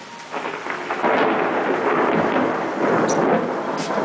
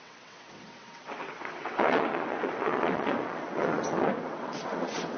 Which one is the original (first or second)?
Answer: first